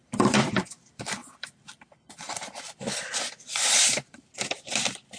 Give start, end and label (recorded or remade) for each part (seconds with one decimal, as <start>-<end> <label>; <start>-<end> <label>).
0.0-5.2 remade